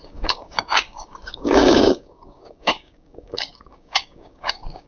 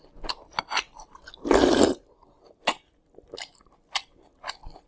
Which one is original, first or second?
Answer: second